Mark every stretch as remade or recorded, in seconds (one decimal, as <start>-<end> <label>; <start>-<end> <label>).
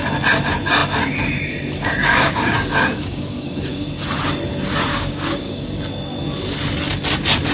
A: 0.0-2.0 recorded; 2.0-3.9 remade; 3.9-4.9 recorded; 4.9-5.8 remade; 5.8-7.5 recorded